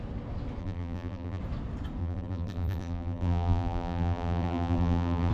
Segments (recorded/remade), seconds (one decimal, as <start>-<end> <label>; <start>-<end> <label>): 0.0-0.6 recorded; 0.6-1.4 remade; 1.4-2.0 recorded; 2.0-5.3 remade